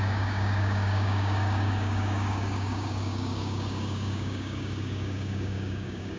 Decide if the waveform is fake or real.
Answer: fake